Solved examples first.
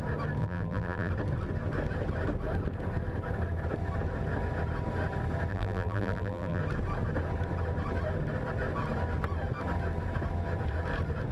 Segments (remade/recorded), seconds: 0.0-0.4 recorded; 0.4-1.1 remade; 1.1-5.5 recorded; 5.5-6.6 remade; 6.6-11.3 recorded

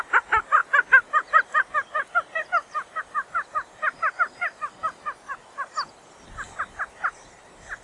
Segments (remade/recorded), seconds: 0.0-0.6 remade; 0.6-3.0 recorded; 3.0-4.8 remade; 4.8-5.3 recorded; 5.3-7.8 remade

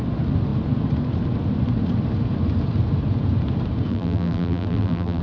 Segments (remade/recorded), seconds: 0.0-3.9 recorded; 3.9-5.2 remade

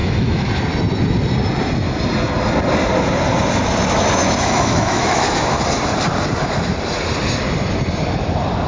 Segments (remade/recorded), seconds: 0.0-0.5 remade; 0.5-4.2 recorded; 4.2-5.6 remade; 5.6-8.7 recorded

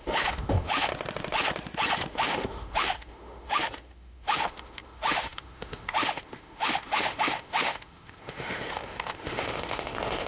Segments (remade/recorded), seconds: 0.0-0.9 remade; 0.9-2.1 recorded; 2.1-10.3 remade

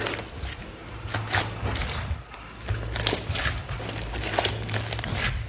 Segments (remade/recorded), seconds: 0.0-5.5 recorded